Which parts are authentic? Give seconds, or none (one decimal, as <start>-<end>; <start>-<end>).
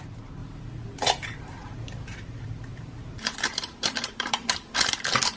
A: 0.0-1.6; 4.8-5.4